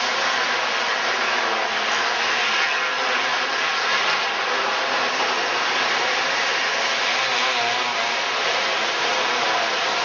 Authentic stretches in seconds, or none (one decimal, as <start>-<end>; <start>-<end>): 0.0-10.0